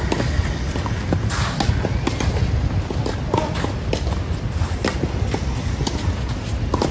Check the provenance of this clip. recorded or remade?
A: recorded